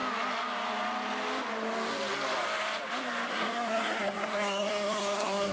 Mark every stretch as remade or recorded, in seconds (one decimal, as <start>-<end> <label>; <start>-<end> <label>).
0.0-3.3 recorded; 3.3-5.5 remade